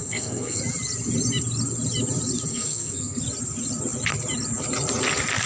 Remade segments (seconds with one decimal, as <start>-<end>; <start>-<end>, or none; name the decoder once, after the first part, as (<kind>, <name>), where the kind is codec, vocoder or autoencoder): 0.0-0.6 (codec, SNAC); 2.5-3.2